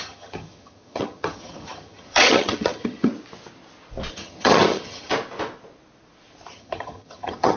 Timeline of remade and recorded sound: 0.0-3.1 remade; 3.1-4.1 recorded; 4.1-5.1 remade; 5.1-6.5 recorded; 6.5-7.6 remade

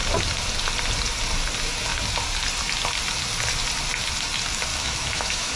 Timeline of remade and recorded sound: 0.0-4.7 recorded; 4.7-5.6 remade

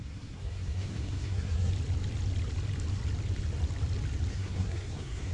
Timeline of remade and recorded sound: 0.0-1.7 remade; 1.7-4.3 recorded; 4.3-5.3 remade

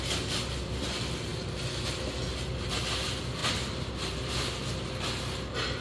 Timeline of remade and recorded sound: 0.0-5.8 recorded

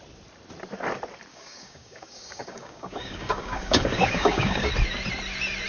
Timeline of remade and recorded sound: 0.0-1.3 recorded; 1.3-4.7 remade; 4.7-5.7 recorded

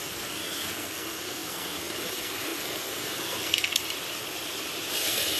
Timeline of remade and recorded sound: 0.0-3.8 remade; 3.8-4.9 recorded; 4.9-5.4 remade

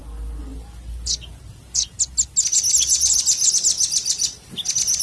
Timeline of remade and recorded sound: 0.0-5.0 recorded